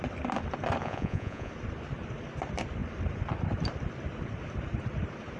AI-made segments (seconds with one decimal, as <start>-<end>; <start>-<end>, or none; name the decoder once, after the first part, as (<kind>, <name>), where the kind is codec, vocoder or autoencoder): 0.8-1.5 (vocoder, Vocos)